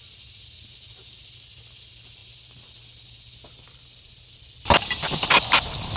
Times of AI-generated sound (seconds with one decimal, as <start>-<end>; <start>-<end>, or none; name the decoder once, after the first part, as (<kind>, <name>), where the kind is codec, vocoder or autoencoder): none